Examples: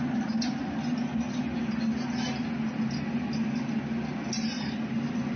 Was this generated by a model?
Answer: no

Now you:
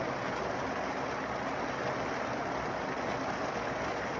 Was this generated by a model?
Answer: no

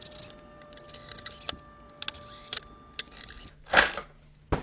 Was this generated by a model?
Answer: no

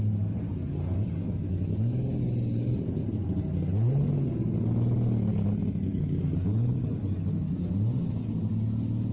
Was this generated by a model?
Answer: no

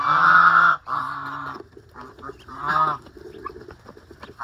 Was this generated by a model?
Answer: no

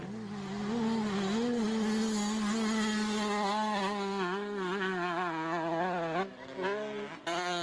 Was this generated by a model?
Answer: no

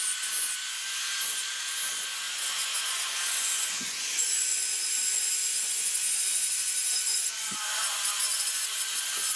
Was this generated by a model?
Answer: yes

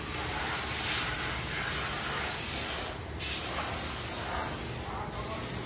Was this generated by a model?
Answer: no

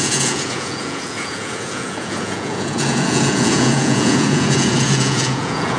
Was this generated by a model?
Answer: yes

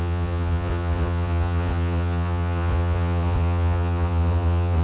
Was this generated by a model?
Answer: yes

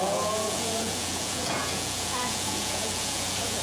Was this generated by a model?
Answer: yes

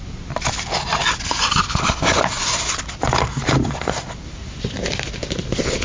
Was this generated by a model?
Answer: no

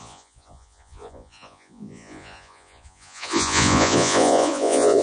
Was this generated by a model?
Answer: yes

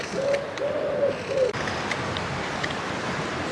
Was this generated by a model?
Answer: no